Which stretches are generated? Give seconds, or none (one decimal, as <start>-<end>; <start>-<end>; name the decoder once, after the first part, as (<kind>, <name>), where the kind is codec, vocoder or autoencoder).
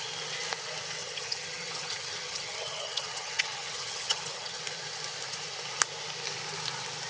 1.0-4.6 (vocoder, HiFi-GAN)